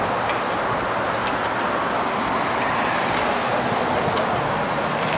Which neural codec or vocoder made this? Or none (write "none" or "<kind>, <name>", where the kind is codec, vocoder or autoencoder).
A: none